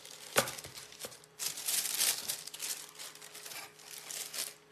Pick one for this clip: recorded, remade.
recorded